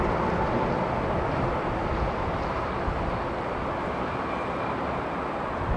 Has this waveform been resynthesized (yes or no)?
no